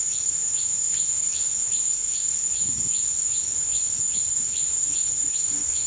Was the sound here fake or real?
fake